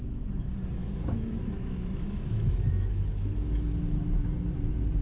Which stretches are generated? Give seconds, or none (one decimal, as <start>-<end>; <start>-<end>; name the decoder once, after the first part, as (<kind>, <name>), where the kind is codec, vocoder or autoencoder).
0.8-3.7 (autoencoder, DAC-VAE)